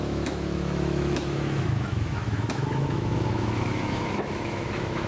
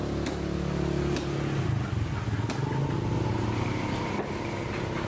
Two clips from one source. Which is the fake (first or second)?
first